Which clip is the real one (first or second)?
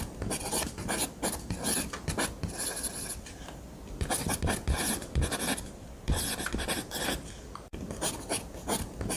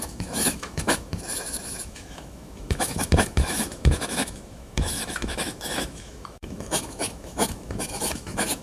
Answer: first